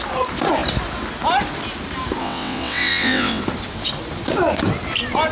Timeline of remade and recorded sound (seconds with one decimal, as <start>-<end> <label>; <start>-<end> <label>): 0.0-2.2 recorded; 2.2-3.4 remade; 3.4-5.3 recorded